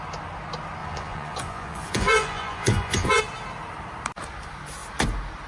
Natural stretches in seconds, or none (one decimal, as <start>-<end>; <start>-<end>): 0.0-0.8; 3.2-5.5